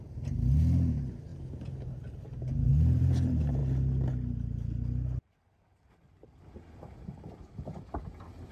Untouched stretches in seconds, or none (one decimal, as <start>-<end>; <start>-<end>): 3.6-7.0